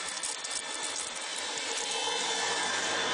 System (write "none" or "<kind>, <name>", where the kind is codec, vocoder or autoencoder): none